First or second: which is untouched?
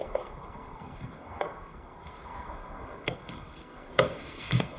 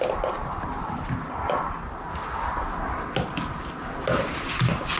second